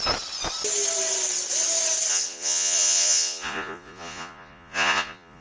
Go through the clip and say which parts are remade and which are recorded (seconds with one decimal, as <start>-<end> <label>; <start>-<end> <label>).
0.0-2.1 recorded; 2.1-5.4 remade